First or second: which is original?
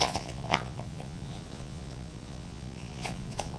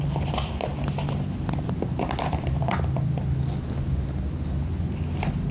second